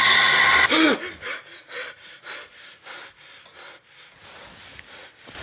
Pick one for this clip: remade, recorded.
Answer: recorded